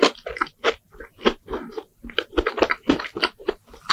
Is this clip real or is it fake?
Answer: real